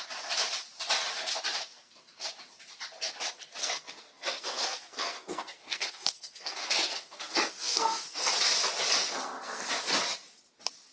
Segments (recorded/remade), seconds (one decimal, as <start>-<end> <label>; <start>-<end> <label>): 0.0-1.6 recorded; 1.6-2.3 remade; 2.3-3.6 recorded; 3.6-8.3 remade; 8.3-9.0 recorded; 9.0-9.7 remade; 9.7-10.9 recorded